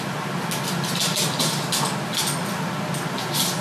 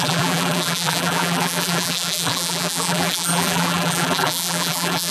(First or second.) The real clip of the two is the first